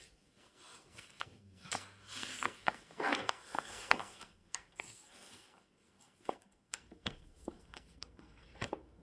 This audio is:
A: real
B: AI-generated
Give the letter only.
B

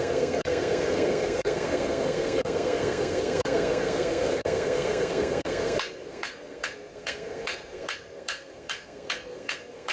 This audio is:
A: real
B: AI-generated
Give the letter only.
B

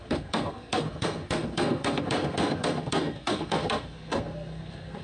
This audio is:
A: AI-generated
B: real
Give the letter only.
A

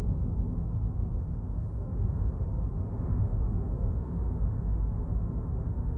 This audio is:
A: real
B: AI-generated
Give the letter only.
B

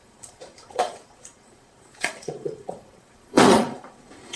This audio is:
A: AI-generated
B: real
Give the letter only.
A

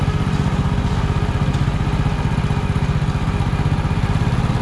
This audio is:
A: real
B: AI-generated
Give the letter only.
A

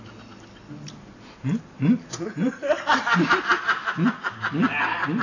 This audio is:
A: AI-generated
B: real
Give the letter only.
B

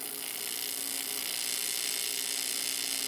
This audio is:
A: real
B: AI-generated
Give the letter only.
A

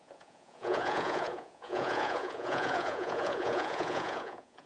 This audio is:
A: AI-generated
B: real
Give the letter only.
A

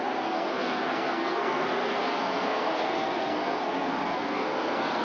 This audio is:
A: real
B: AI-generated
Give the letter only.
B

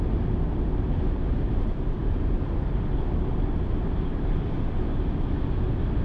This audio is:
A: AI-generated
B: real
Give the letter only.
B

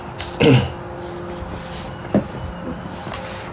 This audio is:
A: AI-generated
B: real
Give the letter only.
B